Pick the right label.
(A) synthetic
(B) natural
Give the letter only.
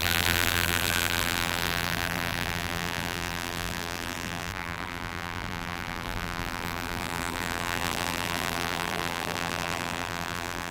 A